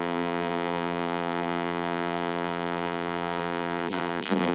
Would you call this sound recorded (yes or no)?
no